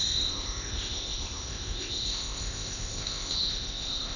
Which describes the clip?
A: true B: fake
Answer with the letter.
B